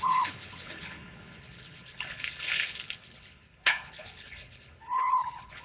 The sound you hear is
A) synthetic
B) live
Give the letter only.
A